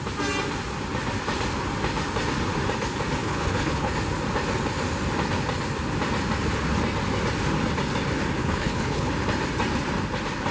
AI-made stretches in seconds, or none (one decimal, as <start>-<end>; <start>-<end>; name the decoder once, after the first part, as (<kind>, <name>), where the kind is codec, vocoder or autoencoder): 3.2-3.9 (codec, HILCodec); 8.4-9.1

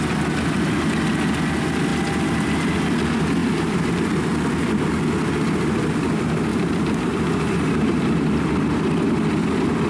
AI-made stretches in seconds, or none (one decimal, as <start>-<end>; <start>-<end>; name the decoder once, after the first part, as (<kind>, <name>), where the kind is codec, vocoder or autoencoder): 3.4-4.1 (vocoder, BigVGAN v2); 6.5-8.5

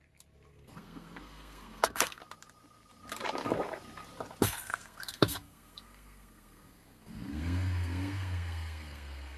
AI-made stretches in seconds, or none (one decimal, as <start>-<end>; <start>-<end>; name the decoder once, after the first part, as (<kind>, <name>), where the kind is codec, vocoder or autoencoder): 0.5-2.2 (codec, SNAC); 4.4-9.4